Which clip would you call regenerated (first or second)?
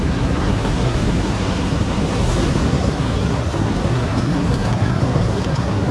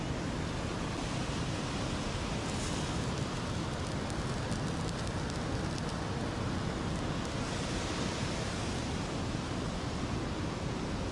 first